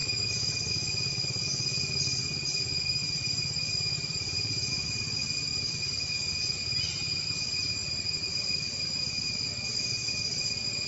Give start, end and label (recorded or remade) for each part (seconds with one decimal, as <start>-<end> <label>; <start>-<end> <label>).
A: 0.0-0.7 remade; 0.7-3.0 recorded; 3.0-4.7 remade; 4.7-5.5 recorded; 5.5-10.4 remade; 10.4-10.9 recorded